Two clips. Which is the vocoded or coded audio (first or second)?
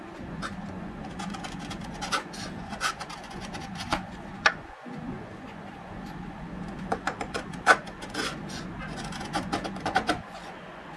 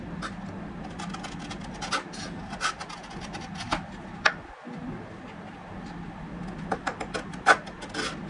first